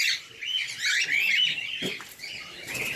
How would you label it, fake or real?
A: real